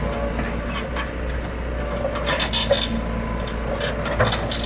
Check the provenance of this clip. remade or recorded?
recorded